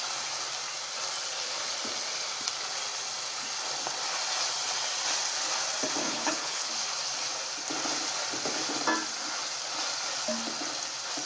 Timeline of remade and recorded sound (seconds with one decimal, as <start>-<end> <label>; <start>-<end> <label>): 0.0-6.0 recorded; 6.0-6.7 remade; 6.7-11.3 recorded